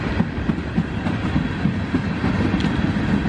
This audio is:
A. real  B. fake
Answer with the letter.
A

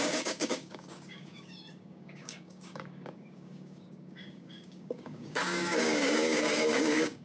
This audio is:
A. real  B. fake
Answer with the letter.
B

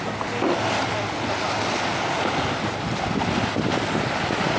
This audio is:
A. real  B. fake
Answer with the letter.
A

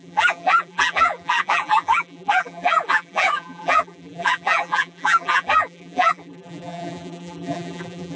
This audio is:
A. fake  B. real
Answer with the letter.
A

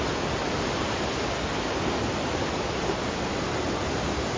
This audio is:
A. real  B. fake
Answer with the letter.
A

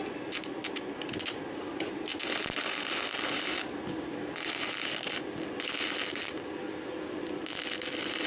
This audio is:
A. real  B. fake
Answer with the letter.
A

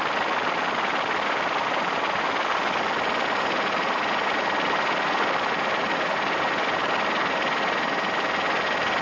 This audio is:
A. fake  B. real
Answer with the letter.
B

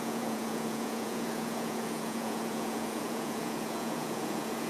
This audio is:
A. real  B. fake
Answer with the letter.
B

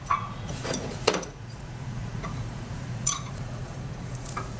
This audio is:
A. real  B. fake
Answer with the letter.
B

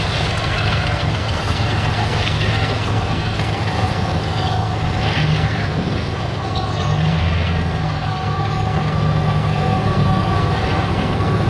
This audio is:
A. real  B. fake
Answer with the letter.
B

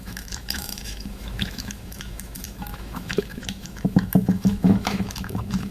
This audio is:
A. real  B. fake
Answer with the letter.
B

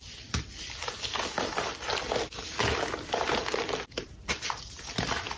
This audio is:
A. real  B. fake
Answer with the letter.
A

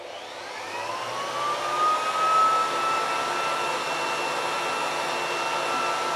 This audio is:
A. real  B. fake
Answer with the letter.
A